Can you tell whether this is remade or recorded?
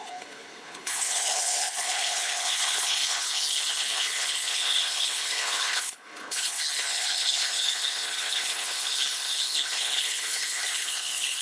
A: remade